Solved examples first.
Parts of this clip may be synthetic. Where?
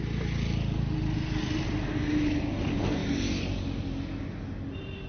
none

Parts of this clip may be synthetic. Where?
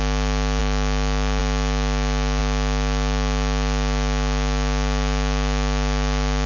0.6-1.4 (autoencoder, DAC-VAE)